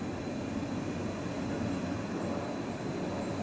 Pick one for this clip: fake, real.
real